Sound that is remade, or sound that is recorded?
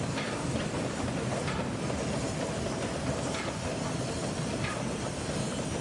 recorded